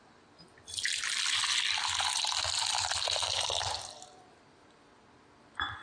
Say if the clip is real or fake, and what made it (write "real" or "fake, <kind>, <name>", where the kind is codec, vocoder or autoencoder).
fake, vocoder, BigVGAN v2